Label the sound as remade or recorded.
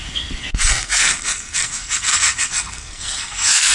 remade